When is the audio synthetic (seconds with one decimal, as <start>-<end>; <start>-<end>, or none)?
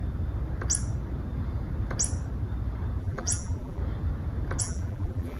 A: 3.0-3.8; 4.6-5.4